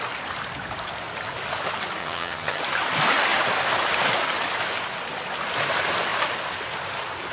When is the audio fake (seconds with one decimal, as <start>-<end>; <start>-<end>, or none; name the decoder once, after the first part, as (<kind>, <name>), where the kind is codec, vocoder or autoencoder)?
2.0-2.6 (vocoder, HiFi-GAN)